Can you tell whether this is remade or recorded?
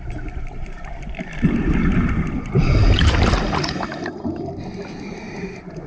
recorded